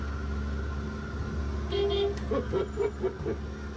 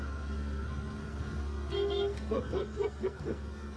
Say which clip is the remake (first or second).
second